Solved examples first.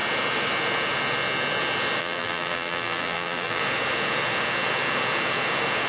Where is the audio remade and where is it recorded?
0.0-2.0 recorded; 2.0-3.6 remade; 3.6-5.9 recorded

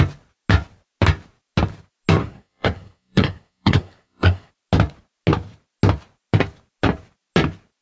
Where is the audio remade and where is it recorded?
0.0-2.2 recorded; 2.2-4.5 remade; 4.5-7.8 recorded

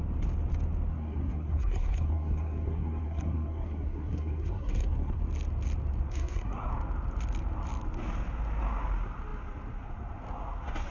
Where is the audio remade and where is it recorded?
0.0-0.9 recorded; 0.9-5.2 remade; 5.2-6.1 recorded; 6.1-6.7 remade; 6.7-10.9 recorded

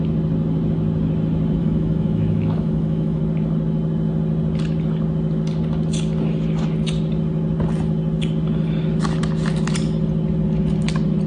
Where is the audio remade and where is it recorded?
0.0-1.6 recorded; 1.6-3.2 remade; 3.2-11.3 recorded

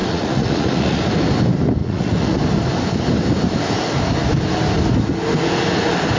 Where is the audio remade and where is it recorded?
0.0-1.0 remade; 1.0-1.8 recorded; 1.8-2.4 remade; 2.4-6.2 recorded

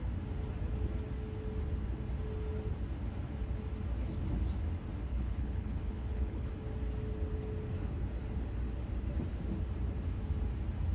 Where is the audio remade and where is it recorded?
0.0-5.1 recorded; 5.1-6.5 remade; 6.5-10.9 recorded

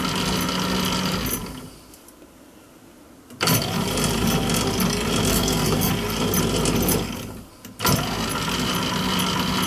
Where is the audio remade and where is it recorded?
0.0-5.3 recorded; 5.3-5.9 remade; 5.9-9.7 recorded

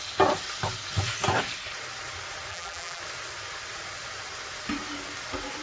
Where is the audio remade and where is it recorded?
0.0-2.5 recorded; 2.5-3.0 remade; 3.0-5.6 recorded